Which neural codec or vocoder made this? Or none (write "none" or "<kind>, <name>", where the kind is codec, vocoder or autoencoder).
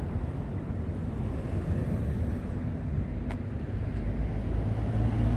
none